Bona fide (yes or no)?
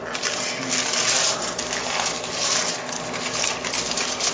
yes